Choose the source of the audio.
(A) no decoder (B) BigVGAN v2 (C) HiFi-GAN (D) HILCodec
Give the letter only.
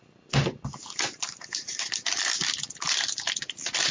A